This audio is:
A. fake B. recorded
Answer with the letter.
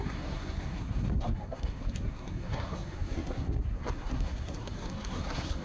A